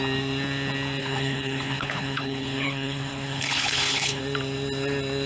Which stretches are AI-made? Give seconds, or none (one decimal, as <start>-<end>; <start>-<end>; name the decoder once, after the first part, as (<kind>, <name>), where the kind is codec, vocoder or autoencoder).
1.0-4.2 (codec, HILCodec)